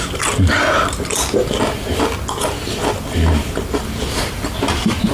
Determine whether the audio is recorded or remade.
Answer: recorded